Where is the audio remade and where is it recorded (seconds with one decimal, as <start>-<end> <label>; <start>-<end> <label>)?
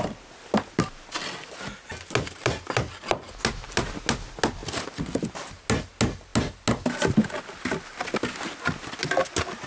0.0-9.7 recorded